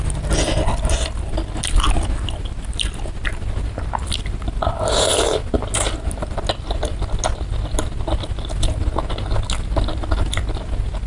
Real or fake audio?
real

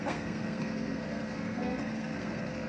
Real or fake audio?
fake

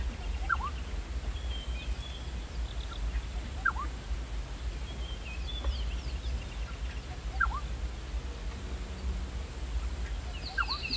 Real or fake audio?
real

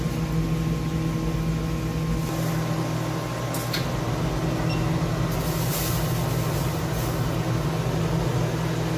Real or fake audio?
real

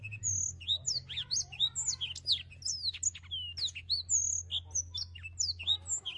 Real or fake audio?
real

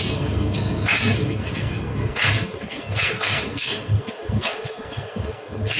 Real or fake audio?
fake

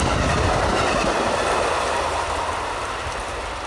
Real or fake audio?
real